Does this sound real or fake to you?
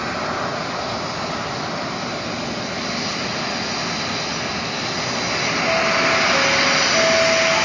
real